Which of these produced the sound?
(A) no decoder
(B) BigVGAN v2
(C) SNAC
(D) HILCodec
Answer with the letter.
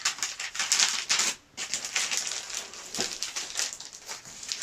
A